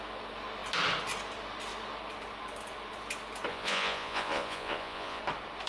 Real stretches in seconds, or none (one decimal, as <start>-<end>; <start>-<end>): 0.0-3.5; 5.2-5.7